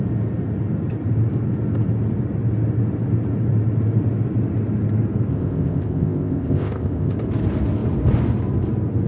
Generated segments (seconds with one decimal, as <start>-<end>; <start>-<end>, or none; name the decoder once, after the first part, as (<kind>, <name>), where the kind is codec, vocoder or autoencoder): 5.3-7.1 (codec, ZipCodec)